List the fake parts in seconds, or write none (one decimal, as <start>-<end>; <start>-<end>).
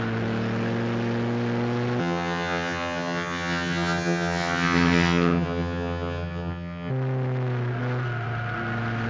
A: 2.0-6.9